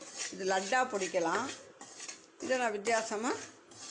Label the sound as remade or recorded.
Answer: recorded